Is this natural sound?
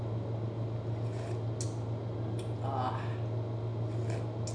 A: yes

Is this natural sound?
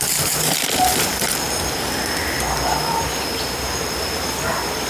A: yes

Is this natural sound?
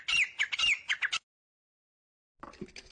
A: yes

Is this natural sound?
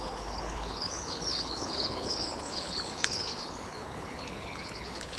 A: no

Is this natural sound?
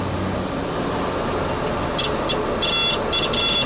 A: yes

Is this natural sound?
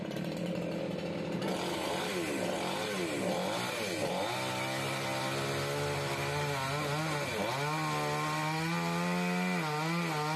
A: yes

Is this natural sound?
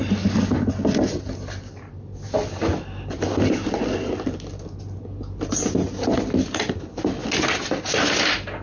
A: yes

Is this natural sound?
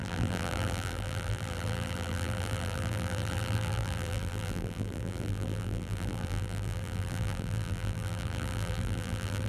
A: no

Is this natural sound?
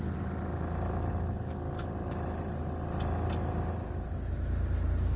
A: yes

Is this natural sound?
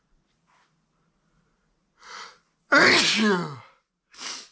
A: yes